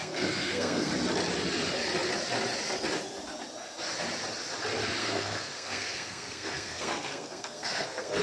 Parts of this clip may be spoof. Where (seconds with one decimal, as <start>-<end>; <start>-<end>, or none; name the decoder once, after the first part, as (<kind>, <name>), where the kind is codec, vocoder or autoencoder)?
0.0-0.9 (codec, SNAC); 5.0-8.2